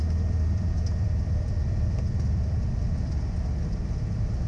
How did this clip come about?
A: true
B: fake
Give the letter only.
A